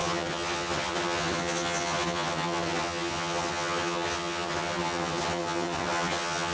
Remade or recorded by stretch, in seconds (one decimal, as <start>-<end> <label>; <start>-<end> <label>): 0.0-6.5 remade